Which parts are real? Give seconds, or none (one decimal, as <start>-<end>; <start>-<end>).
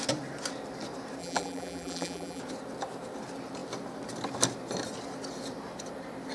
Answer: 0.0-1.2; 2.4-6.3